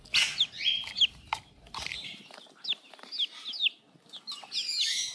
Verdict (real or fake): real